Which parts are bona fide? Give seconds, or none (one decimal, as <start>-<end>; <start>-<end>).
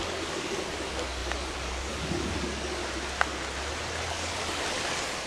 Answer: 2.8-4.1